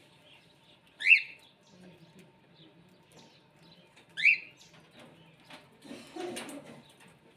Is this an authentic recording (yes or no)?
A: yes